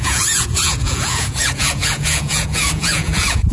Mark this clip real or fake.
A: fake